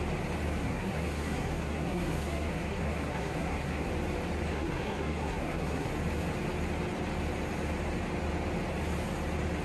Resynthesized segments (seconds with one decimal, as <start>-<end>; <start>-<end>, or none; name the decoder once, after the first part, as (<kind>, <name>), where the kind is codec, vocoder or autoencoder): 0.6-3.9 (codec, SNAC); 4.5-5.9